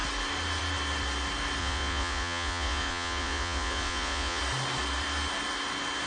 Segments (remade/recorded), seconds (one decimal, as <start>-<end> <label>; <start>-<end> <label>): 0.0-1.6 recorded; 1.6-4.4 remade; 4.4-6.1 recorded